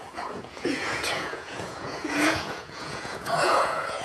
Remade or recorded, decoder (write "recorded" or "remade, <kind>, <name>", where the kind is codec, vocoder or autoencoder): remade, vocoder, Vocos